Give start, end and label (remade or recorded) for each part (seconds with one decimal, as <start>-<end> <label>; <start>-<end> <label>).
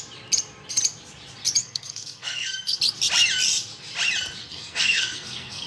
0.0-1.6 recorded; 1.6-2.8 remade; 2.8-4.4 recorded; 4.4-5.7 remade